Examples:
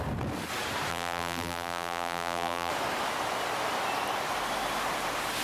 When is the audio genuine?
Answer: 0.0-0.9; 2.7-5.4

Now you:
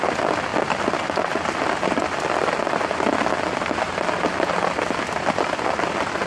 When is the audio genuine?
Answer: 0.0-6.3

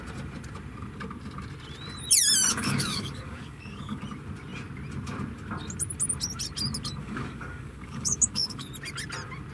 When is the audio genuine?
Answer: 0.0-2.5; 4.0-7.0; 8.7-9.5